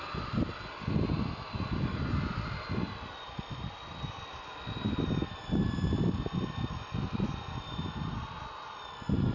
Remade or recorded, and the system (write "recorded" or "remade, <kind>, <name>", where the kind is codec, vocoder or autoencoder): recorded